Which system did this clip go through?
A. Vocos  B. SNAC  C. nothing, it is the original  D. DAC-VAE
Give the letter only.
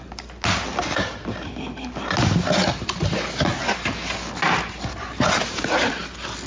C